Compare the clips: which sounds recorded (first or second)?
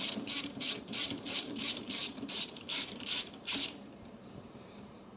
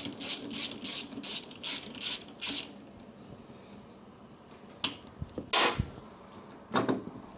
second